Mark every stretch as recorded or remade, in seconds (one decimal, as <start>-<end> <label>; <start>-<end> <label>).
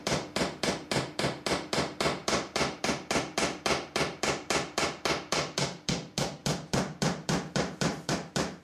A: 0.0-8.6 remade